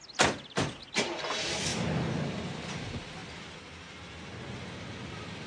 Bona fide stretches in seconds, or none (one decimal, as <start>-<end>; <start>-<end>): 0.0-5.5